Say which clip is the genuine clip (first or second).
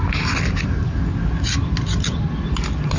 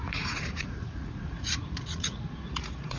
first